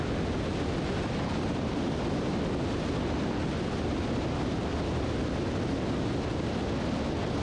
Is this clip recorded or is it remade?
recorded